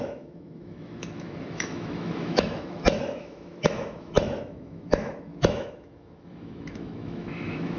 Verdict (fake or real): fake